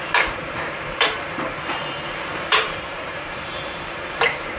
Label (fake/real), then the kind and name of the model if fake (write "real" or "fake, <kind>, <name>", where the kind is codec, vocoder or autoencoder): fake, vocoder, BigVGAN v2